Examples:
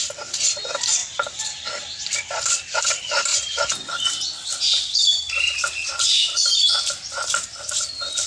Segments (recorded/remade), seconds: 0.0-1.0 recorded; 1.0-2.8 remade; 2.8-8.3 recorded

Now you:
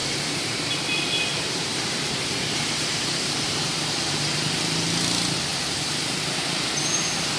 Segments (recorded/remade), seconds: 0.0-0.7 remade; 0.7-1.3 recorded; 1.3-4.6 remade; 4.6-5.5 recorded; 5.5-6.2 remade; 6.2-7.4 recorded

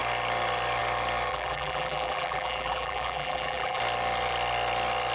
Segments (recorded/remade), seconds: 0.0-1.3 recorded; 1.3-3.8 remade; 3.8-5.1 recorded

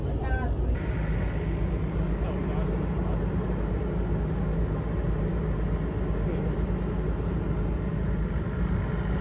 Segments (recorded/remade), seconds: 0.0-9.2 recorded